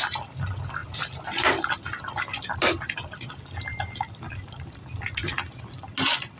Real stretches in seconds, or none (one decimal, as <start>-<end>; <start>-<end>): 0.0-0.8; 1.7-3.7; 4.8-6.4